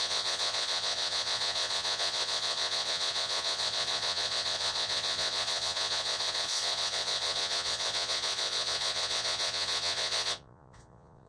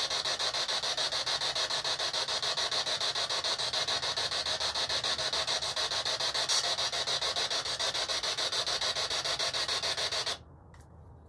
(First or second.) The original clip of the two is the second